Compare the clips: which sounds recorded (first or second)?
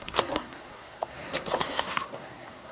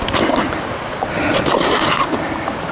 second